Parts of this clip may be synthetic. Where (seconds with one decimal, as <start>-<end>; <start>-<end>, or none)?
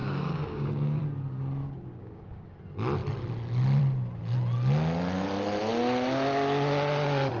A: 0.0-1.0; 1.6-2.6